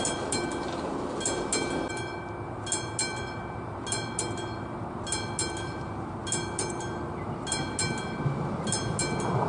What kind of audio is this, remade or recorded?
recorded